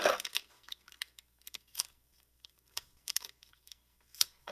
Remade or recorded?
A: remade